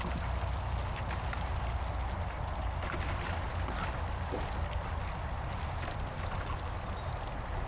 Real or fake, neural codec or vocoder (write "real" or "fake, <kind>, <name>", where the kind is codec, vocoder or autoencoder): real